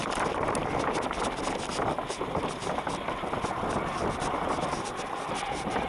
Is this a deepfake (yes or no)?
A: no